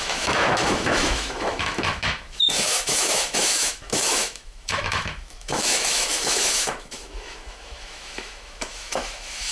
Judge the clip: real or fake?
fake